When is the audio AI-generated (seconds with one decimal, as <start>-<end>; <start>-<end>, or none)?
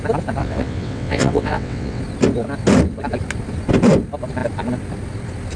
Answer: 0.4-2.0